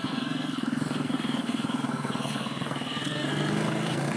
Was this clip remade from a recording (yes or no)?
yes